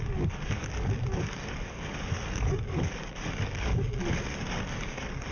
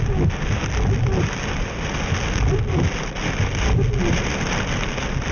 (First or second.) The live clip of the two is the second